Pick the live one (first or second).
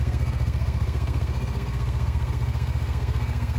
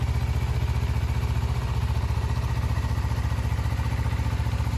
second